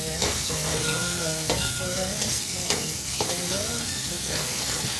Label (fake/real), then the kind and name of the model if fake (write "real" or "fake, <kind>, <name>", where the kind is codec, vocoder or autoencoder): fake, codec, SNAC